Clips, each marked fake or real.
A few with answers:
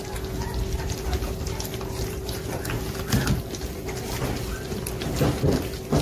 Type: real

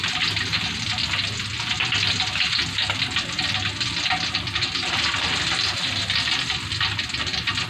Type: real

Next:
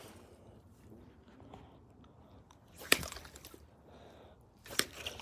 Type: fake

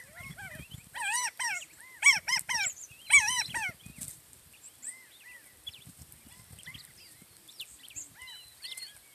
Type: fake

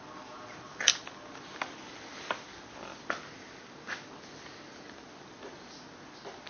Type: real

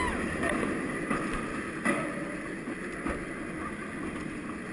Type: real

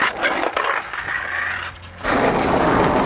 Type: real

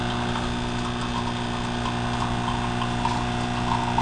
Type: real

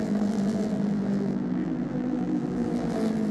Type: fake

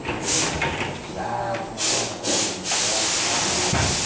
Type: real